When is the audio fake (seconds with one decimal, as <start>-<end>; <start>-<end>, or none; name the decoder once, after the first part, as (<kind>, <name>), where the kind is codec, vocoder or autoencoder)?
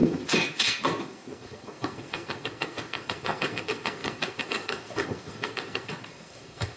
0.0-6.8 (codec, SNAC)